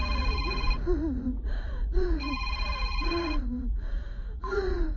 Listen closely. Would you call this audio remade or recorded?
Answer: remade